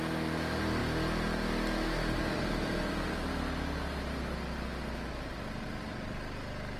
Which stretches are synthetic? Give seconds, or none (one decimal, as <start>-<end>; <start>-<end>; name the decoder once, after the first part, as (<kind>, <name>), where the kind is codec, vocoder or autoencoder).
none